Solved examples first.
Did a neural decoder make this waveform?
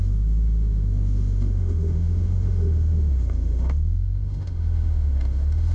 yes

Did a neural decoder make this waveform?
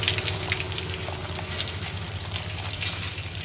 no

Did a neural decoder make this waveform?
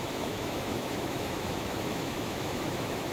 yes